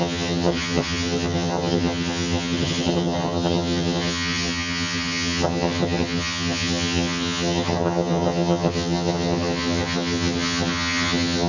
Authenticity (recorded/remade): remade